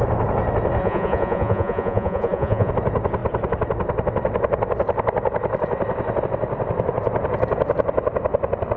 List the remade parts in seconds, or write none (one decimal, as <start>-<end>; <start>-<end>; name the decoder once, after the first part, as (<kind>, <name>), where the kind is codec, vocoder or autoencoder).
0.8-2.7 (vocoder, Vocos)